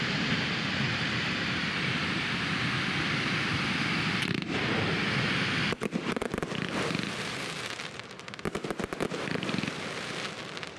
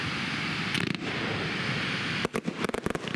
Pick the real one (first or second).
second